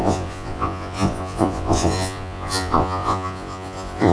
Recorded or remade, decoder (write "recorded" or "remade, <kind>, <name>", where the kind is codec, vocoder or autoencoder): remade, vocoder, Vocos